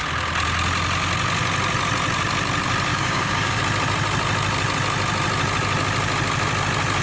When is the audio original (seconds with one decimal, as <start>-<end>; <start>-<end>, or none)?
0.0-2.9; 3.6-7.0